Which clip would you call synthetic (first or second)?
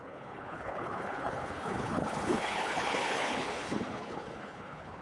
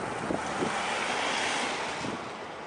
first